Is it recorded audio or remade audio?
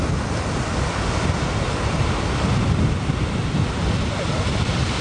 recorded